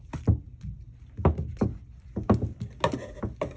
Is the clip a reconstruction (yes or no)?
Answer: no